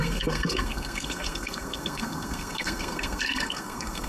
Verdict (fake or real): fake